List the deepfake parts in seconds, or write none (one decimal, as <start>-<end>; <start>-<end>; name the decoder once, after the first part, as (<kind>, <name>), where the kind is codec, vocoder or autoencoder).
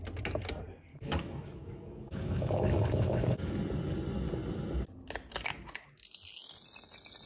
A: 0.9-3.5 (codec, DAC)